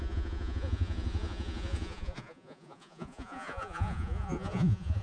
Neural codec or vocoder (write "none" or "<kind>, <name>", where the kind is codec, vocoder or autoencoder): vocoder, Vocos